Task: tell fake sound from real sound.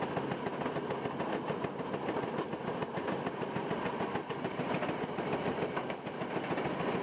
real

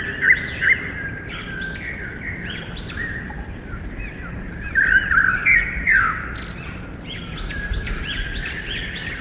real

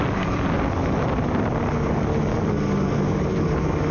real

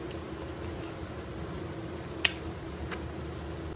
real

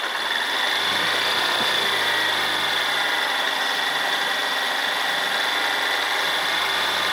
real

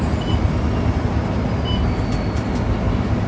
real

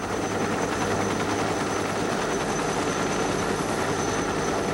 real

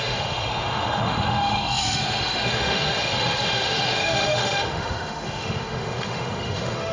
fake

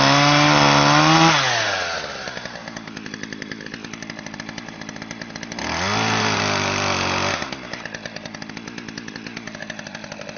real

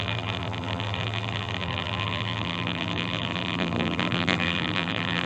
fake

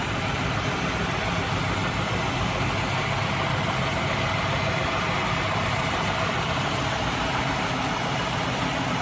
real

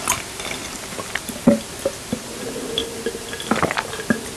real